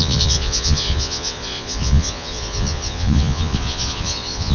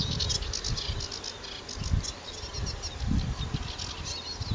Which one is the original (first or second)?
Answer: second